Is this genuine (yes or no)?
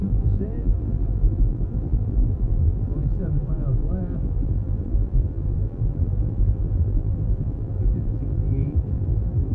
no